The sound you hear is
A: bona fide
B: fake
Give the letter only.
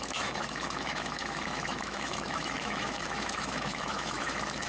B